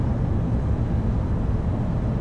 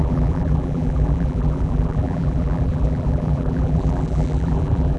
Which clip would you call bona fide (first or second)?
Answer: first